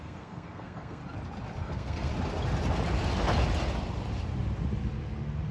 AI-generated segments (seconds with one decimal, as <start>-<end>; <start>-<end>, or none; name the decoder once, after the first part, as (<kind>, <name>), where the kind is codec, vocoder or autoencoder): 0.0-1.0 (codec, SNAC); 1.6-2.1

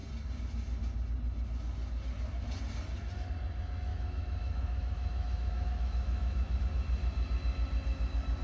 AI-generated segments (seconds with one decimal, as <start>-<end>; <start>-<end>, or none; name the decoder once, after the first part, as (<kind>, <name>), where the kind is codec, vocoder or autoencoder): 3.9-6.6 (autoencoder, DAC-VAE)

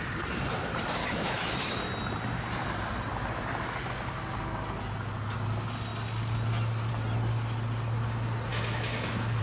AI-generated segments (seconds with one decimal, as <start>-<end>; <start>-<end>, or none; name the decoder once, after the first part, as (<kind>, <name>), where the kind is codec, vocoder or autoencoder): 1.0-1.8 (autoencoder, DAC-VAE); 8.5-9.4

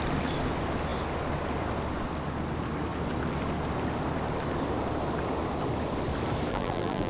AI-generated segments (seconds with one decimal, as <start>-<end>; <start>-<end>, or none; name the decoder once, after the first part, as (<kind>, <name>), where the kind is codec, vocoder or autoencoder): 6.5-7.1 (vocoder, BigVGAN v2)

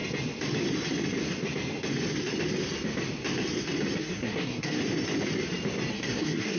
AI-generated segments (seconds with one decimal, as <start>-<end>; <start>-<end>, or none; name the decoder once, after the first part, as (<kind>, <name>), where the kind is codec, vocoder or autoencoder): 4.0-4.8 (codec, SNAC); 5.9-6.6

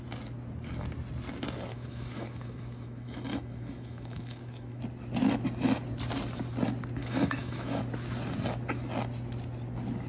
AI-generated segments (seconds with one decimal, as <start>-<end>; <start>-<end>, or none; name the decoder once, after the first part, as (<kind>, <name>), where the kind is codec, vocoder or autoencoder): 1.7-4.8 (autoencoder, DAC-VAE); 7.0-7.8